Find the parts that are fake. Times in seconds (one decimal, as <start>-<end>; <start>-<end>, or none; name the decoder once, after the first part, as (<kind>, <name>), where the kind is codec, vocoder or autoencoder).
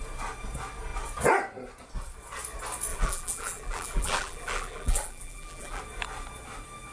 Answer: 2.9-5.8 (vocoder, BigVGAN v2)